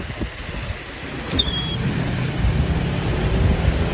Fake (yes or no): no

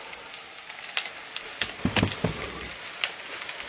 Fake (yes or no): no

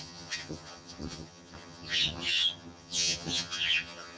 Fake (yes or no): yes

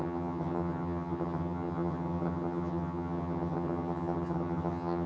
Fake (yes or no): yes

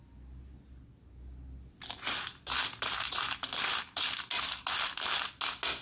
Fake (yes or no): no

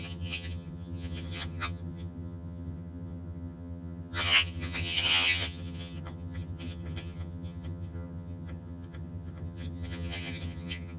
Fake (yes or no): yes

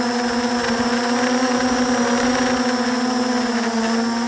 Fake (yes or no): no